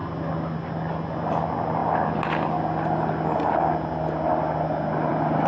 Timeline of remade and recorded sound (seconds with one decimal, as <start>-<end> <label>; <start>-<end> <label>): 0.0-1.1 remade; 1.1-5.5 recorded